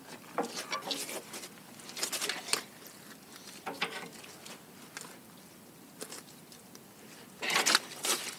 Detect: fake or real real